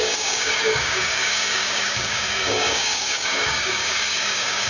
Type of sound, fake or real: fake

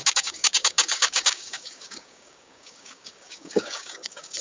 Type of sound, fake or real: fake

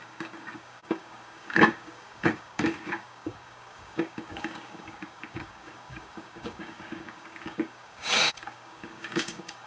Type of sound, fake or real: fake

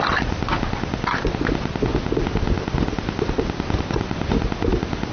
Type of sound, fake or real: real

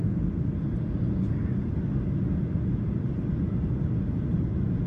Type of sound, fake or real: real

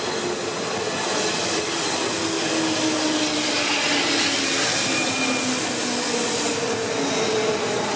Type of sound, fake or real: real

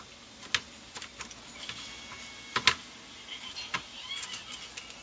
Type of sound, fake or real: real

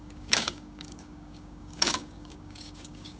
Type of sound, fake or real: fake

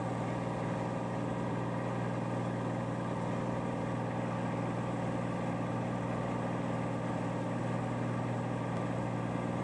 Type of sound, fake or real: real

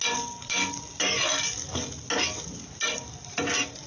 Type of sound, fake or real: real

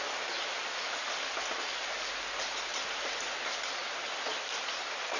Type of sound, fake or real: real